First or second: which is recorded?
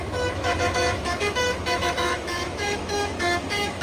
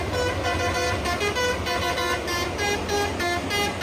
second